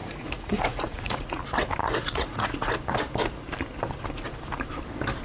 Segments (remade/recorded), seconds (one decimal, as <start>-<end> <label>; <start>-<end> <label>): 0.0-1.4 remade; 1.4-1.8 recorded; 1.8-2.7 remade; 2.7-5.2 recorded